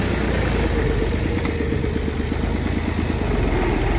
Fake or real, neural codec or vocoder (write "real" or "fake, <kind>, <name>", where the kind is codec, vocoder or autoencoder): real